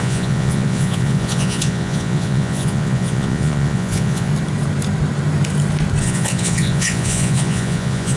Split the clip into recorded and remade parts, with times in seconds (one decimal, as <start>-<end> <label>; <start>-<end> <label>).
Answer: 0.0-4.3 remade; 4.3-6.0 recorded; 6.0-8.2 remade